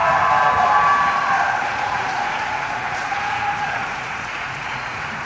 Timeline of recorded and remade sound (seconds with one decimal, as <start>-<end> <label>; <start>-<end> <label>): 0.0-1.7 recorded; 1.7-5.3 remade